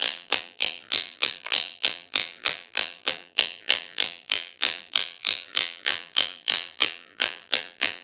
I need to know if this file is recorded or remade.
remade